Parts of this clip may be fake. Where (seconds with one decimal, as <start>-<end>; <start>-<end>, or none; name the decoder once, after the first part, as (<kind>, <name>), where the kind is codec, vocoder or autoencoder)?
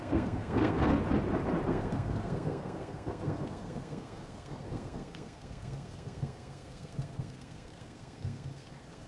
0.0-0.9 (codec, SNAC); 1.7-9.1